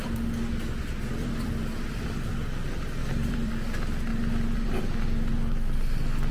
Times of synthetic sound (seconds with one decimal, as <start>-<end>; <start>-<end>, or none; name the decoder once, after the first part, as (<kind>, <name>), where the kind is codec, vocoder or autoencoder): 1.2-2.1 (vocoder, BigVGAN v2); 3.0-3.5; 4.1-4.8